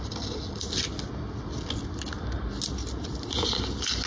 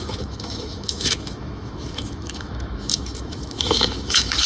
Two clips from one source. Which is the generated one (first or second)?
second